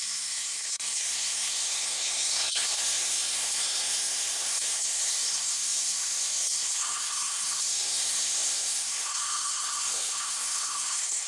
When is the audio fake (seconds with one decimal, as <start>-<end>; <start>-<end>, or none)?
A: 0.0-11.3